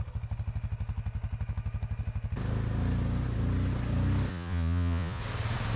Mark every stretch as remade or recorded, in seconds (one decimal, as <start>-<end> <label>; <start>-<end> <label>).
0.0-4.3 recorded; 4.3-5.2 remade; 5.2-5.8 recorded